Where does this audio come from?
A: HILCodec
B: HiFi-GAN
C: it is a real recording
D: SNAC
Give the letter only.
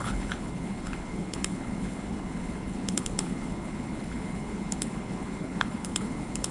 A